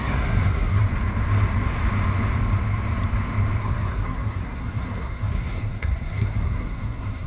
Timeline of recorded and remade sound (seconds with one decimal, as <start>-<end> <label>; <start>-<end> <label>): 0.0-0.8 remade; 0.8-3.6 recorded; 3.6-7.3 remade